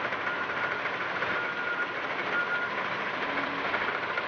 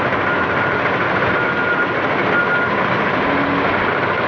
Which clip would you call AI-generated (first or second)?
first